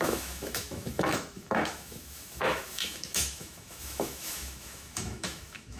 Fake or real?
fake